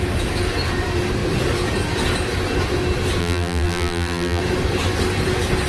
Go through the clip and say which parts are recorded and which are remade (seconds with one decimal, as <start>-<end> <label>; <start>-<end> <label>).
0.0-3.2 recorded; 3.2-4.4 remade; 4.4-5.7 recorded

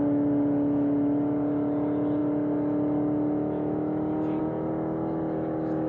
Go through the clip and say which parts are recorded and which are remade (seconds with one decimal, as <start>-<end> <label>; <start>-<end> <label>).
0.0-5.9 recorded

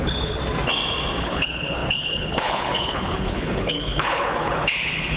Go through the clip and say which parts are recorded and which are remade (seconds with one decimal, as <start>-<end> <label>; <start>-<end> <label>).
0.0-0.4 remade; 0.4-1.2 recorded; 1.2-5.2 remade

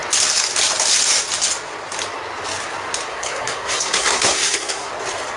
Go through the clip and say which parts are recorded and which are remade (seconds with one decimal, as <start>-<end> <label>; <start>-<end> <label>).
0.0-3.1 recorded; 3.1-4.9 remade; 4.9-5.4 recorded

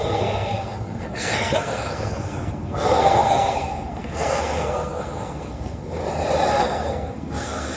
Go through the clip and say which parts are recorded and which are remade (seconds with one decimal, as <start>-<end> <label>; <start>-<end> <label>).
0.0-6.0 remade; 6.0-6.5 recorded; 6.5-7.8 remade